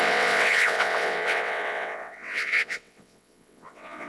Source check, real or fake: fake